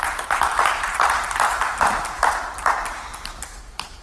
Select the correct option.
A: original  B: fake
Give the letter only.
B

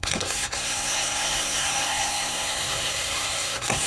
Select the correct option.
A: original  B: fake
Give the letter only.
B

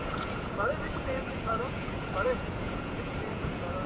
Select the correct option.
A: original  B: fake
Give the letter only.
B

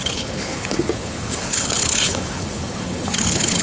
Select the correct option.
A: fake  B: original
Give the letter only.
A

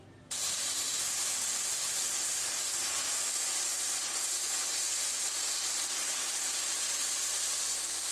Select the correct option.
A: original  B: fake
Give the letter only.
B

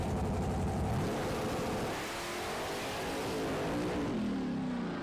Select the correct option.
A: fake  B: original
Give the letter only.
B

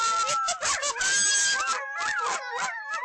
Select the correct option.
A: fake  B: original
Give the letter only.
B